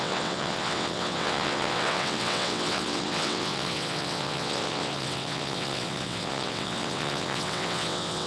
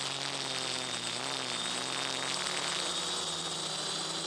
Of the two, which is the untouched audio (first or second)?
second